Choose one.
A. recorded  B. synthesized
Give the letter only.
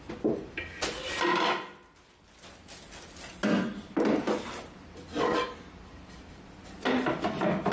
A